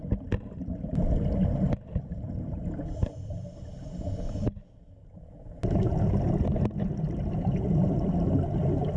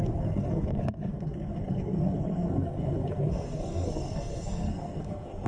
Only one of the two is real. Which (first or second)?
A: first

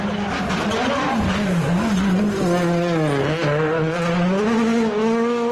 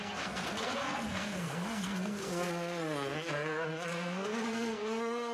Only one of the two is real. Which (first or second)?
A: first